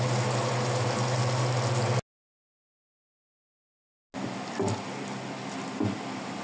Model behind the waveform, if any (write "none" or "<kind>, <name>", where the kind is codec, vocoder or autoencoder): none